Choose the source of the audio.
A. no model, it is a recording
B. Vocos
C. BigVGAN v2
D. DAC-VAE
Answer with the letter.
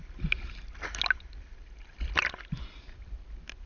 A